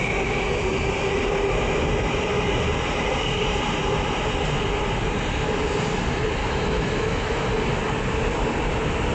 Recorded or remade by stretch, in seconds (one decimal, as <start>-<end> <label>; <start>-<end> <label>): 0.0-6.4 recorded; 6.4-7.5 remade; 7.5-9.1 recorded

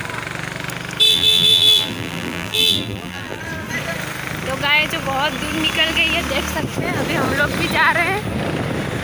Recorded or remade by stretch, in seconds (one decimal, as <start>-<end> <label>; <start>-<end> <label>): 0.0-1.1 recorded; 1.1-3.4 remade; 3.4-9.0 recorded

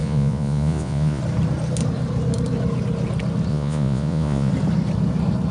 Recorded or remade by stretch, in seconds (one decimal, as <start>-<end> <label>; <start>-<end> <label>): 0.0-1.2 remade; 1.2-3.5 recorded; 3.5-4.5 remade; 4.5-5.5 recorded

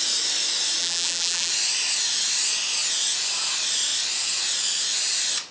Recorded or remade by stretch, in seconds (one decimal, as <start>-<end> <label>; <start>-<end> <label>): 0.0-0.8 recorded; 0.8-1.5 remade; 1.5-5.5 recorded

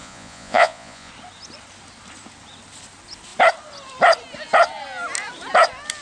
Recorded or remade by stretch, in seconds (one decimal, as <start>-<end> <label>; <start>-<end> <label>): 0.0-1.1 remade; 1.1-6.0 recorded

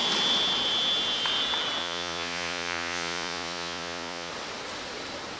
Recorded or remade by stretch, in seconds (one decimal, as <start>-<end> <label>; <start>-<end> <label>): 0.0-1.8 recorded; 1.8-4.3 remade; 4.3-5.4 recorded